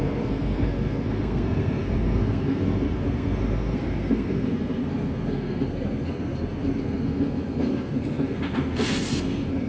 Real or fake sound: fake